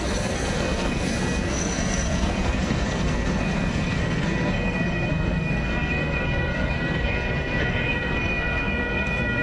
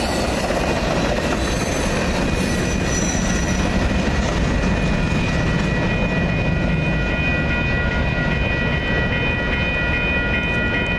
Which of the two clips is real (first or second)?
second